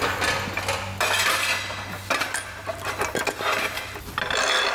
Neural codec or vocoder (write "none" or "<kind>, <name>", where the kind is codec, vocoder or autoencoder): none